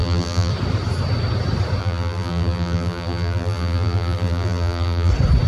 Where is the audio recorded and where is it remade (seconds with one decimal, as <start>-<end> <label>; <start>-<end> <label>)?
0.0-0.5 remade; 0.5-1.8 recorded; 1.8-5.1 remade; 5.1-5.5 recorded